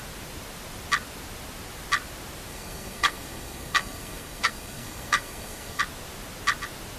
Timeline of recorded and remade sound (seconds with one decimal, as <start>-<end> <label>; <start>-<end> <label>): 0.0-2.5 recorded; 2.5-5.8 remade; 5.8-7.0 recorded